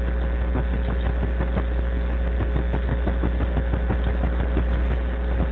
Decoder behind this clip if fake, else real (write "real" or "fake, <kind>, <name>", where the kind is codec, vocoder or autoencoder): real